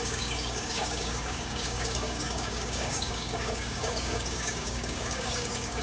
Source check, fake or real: fake